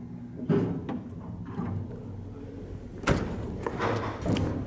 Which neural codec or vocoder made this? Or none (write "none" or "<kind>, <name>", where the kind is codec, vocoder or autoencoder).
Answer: none